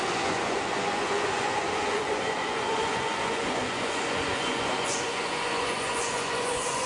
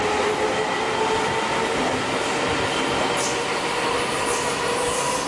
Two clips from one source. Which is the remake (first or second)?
first